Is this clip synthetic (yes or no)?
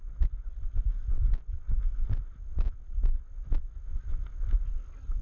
no